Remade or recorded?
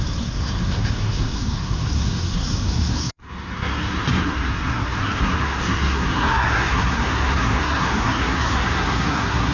remade